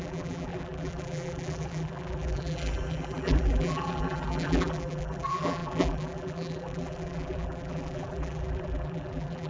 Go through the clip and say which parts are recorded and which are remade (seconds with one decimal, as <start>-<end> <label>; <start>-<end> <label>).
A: 0.0-9.5 remade